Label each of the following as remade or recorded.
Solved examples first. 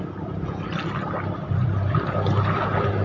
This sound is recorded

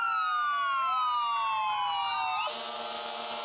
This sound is recorded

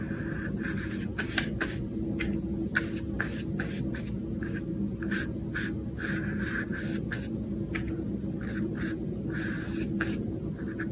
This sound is recorded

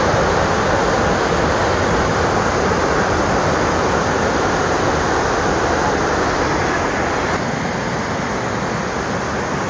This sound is recorded